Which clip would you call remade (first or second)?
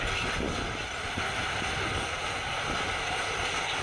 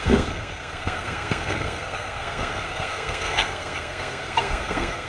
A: second